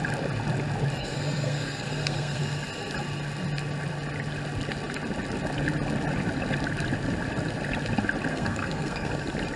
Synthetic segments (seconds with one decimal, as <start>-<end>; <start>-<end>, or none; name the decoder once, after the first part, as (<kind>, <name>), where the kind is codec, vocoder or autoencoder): 1.0-2.4 (codec, SNAC); 8.3-9.1